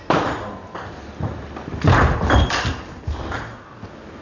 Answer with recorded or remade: recorded